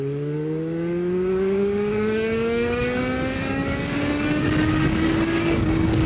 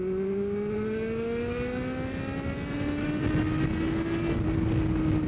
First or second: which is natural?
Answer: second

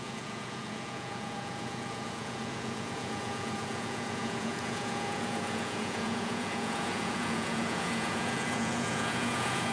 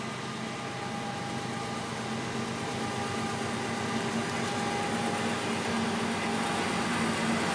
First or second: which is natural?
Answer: second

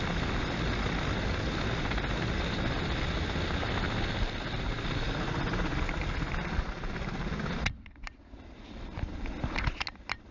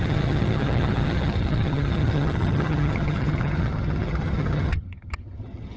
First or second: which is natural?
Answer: first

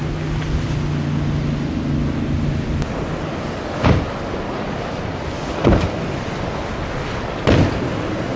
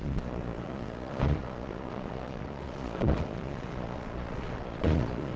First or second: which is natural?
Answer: first